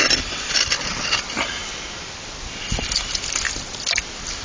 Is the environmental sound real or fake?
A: real